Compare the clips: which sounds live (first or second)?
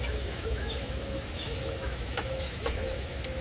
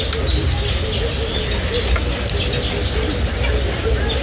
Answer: second